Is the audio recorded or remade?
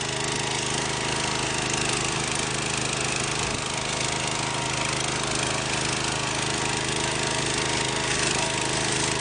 recorded